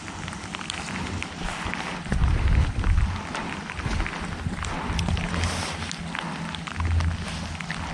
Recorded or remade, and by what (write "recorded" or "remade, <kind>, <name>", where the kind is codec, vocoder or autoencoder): recorded